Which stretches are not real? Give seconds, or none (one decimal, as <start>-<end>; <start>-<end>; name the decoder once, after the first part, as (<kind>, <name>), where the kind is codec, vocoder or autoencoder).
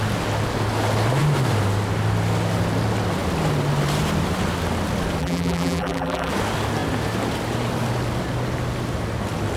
5.2-6.3 (vocoder, BigVGAN v2)